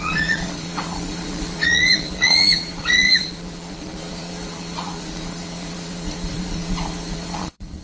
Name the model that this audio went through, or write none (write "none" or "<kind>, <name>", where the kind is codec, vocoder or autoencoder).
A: vocoder, Vocos